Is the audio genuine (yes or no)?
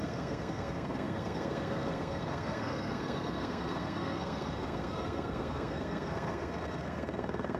no